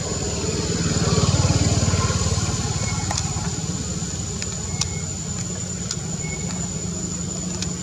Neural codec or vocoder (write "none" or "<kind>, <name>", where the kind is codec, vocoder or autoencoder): none